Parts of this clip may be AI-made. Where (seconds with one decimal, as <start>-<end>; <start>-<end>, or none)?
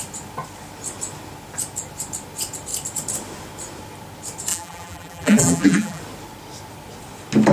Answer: 4.5-6.0